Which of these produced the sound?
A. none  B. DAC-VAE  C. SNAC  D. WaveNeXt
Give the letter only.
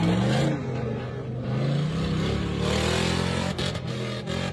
A